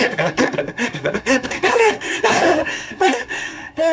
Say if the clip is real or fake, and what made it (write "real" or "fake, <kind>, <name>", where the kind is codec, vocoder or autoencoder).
fake, codec, SNAC